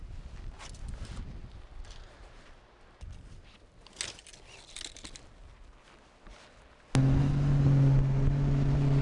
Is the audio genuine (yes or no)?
yes